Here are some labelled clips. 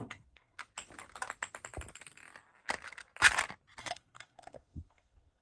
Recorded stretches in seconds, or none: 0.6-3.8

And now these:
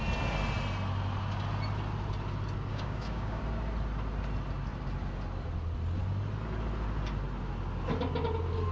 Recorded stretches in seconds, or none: 0.0-2.7; 3.4-8.7

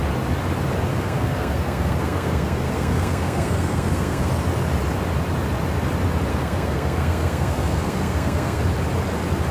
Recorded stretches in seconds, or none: 0.0-0.9; 4.3-6.3; 8.6-9.5